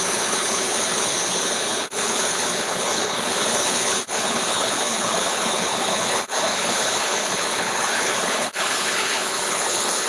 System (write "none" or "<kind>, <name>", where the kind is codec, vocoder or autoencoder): codec, HILCodec